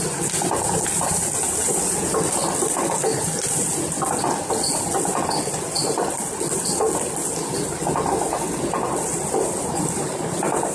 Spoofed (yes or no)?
no